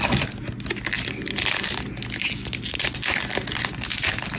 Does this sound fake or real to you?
real